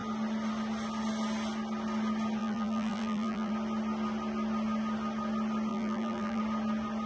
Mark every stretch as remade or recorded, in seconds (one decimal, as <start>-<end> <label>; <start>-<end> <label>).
0.0-2.4 recorded; 2.4-3.5 remade; 3.5-5.7 recorded; 5.7-6.4 remade; 6.4-7.1 recorded